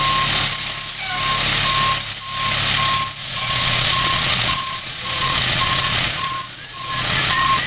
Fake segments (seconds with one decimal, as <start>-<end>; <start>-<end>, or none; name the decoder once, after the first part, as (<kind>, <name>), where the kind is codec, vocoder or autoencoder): 3.2-7.7 (vocoder, Vocos)